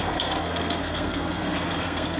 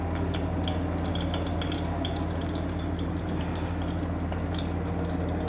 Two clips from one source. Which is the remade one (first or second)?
first